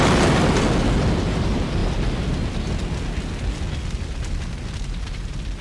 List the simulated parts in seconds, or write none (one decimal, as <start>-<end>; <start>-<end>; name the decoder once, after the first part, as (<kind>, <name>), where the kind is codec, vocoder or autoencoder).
none